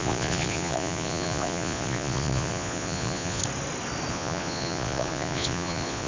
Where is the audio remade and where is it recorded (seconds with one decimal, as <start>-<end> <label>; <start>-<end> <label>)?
0.0-3.4 remade; 3.4-4.1 recorded; 4.1-6.1 remade